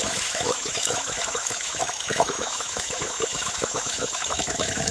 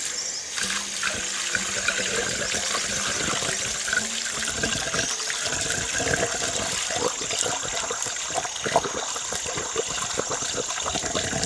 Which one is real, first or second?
second